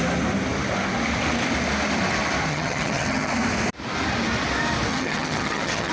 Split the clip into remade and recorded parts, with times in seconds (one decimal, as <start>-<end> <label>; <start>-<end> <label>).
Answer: 0.0-2.5 recorded; 2.5-3.3 remade; 3.3-4.9 recorded; 4.9-5.9 remade